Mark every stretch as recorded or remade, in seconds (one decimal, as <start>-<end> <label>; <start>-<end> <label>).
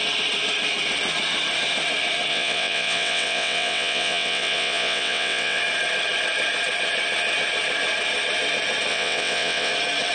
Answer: 0.0-2.3 recorded; 2.3-5.6 remade; 5.6-8.9 recorded; 8.9-9.7 remade; 9.7-10.1 recorded